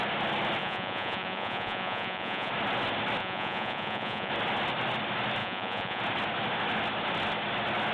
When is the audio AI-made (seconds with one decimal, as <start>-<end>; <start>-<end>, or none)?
0.6-2.5; 3.2-4.3; 5.4-6.0